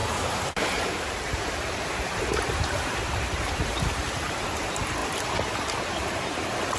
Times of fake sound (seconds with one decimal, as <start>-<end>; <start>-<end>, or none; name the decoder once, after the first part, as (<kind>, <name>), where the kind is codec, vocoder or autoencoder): 0.0-2.2 (vocoder, BigVGAN v2)